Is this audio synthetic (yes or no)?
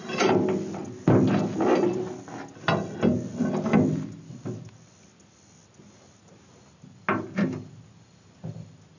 no